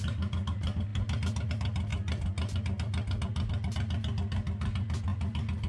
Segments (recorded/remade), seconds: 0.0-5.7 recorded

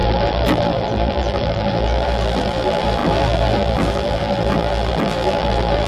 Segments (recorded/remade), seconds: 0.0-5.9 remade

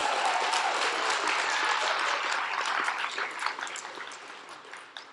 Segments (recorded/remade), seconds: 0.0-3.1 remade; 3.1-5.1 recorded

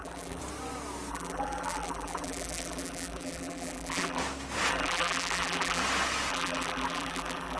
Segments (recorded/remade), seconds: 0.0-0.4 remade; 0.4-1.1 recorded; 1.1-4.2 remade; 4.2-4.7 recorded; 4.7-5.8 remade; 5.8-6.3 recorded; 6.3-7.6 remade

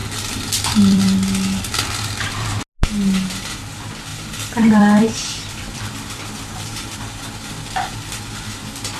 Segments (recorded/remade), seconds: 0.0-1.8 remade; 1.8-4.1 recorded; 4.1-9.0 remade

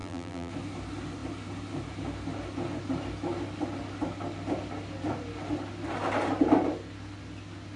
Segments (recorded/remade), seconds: 0.0-0.5 remade; 0.5-7.8 recorded

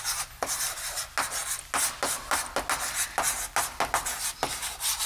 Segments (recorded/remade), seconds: 0.0-5.1 recorded